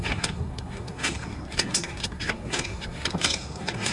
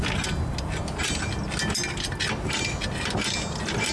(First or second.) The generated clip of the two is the first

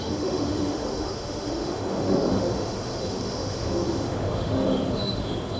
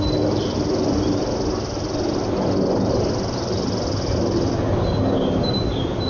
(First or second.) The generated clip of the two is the first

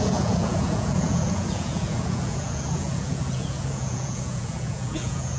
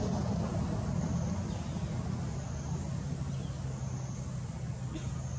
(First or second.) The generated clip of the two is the first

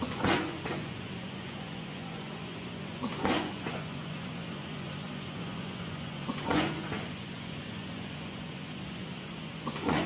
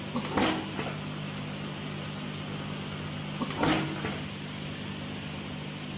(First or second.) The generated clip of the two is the first